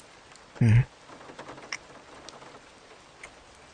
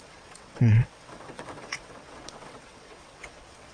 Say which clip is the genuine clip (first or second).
first